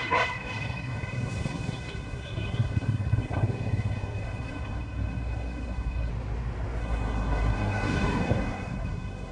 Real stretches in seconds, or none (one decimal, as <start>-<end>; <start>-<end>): 6.1-6.8